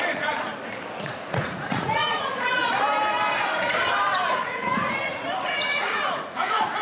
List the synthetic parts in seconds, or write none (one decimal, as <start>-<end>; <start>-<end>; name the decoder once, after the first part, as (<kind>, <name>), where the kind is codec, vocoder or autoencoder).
0.0-0.5 (vocoder, Vocos); 1.0-2.6; 4.1-6.8